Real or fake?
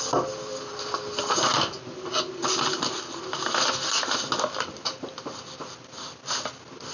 real